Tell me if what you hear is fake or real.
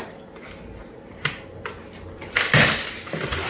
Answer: real